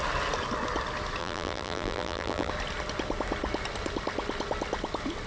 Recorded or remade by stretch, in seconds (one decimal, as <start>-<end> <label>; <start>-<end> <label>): 0.0-1.2 recorded; 1.2-2.5 remade; 2.5-5.3 recorded